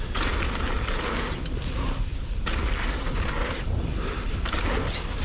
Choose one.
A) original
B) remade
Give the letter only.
A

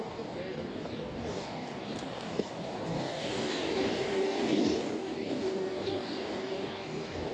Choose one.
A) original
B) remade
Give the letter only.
B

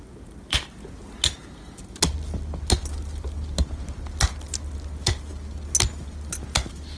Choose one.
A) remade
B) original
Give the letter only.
B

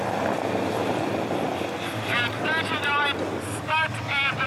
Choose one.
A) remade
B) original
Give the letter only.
B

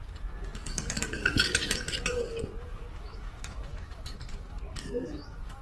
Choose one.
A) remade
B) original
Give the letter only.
A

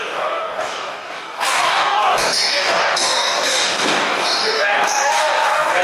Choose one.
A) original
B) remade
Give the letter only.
B